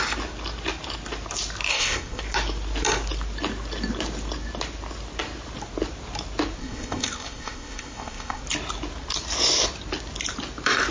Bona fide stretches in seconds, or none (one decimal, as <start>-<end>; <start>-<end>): 0.0-1.7; 2.2-6.6; 8.4-10.9